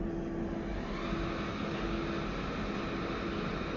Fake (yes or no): no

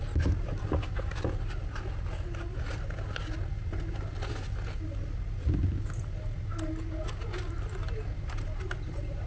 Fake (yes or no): no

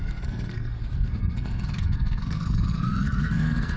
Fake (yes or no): yes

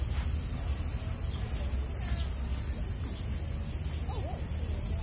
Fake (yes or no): no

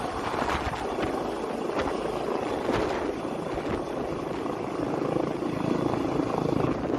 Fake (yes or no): no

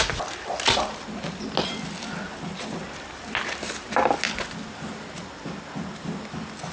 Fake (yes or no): no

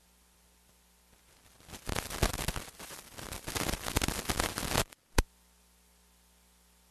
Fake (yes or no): no